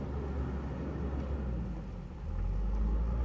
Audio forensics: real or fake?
real